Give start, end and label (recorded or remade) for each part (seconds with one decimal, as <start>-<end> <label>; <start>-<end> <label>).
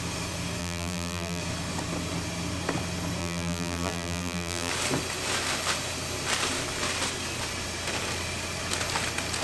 0.0-0.6 recorded; 0.6-1.4 remade; 1.4-3.2 recorded; 3.2-4.7 remade; 4.7-9.4 recorded